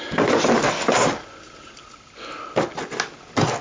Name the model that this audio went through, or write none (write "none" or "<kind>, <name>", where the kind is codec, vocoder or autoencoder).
none